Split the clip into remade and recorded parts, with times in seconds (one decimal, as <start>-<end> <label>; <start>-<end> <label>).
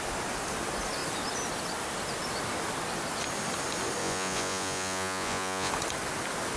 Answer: 0.0-4.0 recorded; 4.0-5.7 remade; 5.7-6.6 recorded